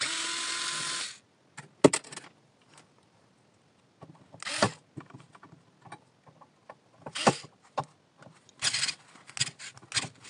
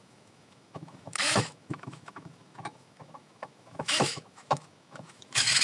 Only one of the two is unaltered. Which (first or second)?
first